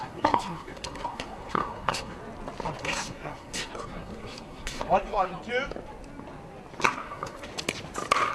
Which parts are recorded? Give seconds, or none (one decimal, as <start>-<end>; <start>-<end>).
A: 2.2-2.8; 5.3-6.8; 7.5-8.3